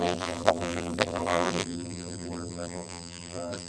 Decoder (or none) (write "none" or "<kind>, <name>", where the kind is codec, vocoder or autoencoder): vocoder, BigVGAN v2